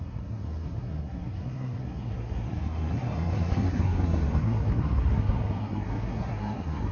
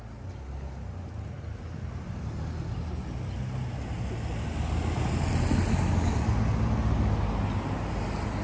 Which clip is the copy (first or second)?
first